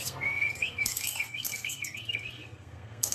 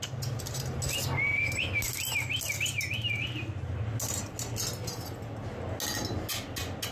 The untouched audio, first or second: second